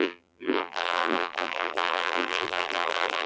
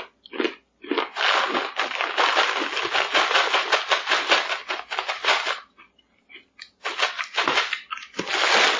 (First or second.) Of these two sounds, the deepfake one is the first